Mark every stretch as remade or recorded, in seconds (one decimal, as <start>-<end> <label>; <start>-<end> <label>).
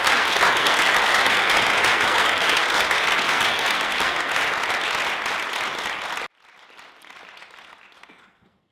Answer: 0.0-4.4 remade; 4.4-8.1 recorded; 8.1-8.7 remade